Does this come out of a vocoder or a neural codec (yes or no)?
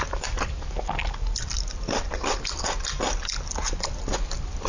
no